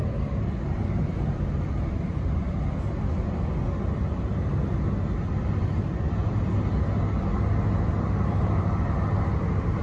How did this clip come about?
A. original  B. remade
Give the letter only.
A